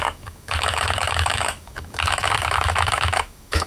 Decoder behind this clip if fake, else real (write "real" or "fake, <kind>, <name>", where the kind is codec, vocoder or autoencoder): fake, autoencoder, DAC-VAE